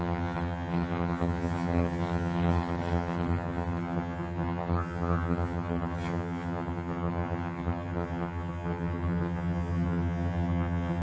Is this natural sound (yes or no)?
no